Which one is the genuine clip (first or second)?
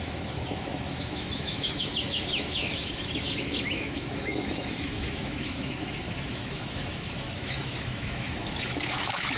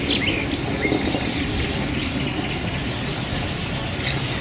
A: second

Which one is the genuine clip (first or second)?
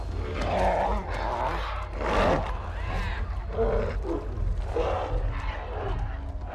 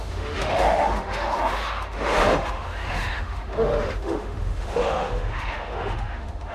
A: first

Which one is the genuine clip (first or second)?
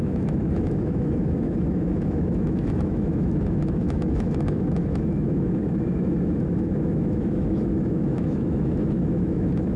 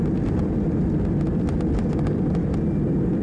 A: second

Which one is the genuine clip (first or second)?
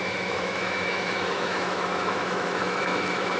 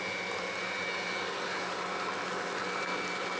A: second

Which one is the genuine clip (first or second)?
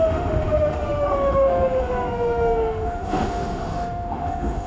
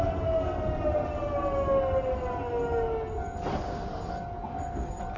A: second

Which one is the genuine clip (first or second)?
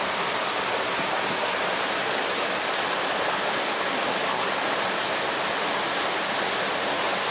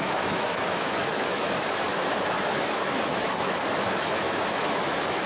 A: first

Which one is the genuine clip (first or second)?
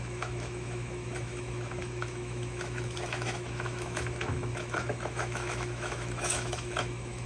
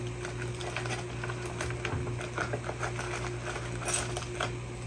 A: second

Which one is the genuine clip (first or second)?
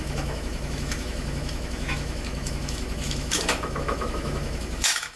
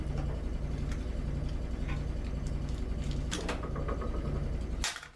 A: second